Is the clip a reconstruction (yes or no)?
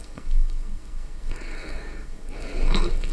yes